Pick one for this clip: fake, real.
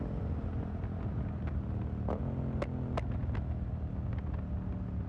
real